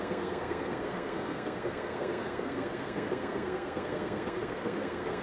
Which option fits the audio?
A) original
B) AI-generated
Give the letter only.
B